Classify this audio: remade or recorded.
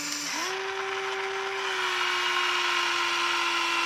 recorded